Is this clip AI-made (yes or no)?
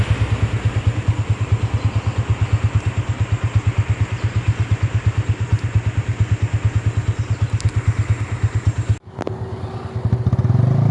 no